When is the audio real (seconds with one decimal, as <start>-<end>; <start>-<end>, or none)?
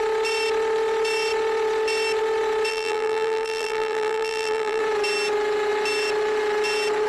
0.0-2.7; 4.8-7.1